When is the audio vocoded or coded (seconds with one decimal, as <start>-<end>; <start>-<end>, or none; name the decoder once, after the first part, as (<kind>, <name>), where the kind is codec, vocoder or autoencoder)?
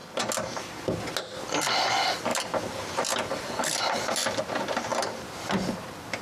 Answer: 2.3-4.4 (vocoder, BigVGAN v2); 4.9-6.2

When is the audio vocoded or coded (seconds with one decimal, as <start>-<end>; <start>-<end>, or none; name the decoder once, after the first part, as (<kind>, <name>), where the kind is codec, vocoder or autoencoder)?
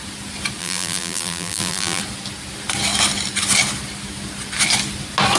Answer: 0.6-2.0 (vocoder, BigVGAN v2)